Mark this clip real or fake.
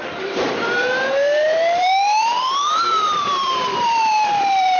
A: fake